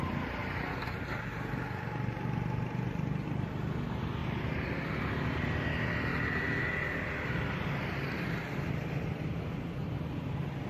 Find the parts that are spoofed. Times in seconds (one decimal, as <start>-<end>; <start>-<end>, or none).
none